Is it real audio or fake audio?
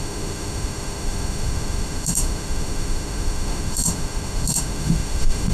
fake